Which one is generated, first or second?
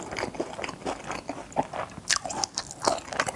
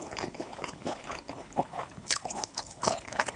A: second